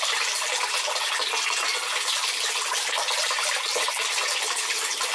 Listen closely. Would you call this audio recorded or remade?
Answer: recorded